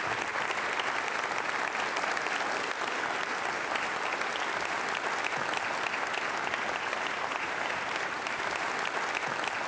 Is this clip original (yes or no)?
yes